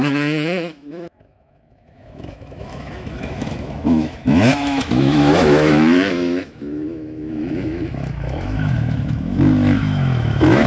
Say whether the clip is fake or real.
fake